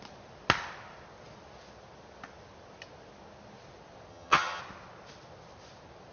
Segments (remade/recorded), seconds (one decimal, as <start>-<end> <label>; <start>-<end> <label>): 0.0-4.1 recorded; 4.1-4.6 remade; 4.6-6.1 recorded